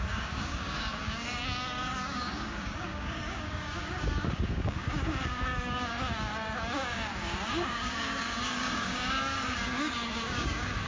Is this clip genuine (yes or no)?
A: no